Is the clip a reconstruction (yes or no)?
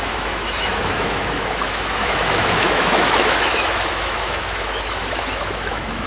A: yes